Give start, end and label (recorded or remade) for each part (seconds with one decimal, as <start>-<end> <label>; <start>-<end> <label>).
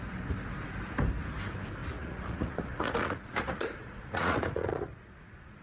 0.0-1.8 recorded; 1.8-5.6 remade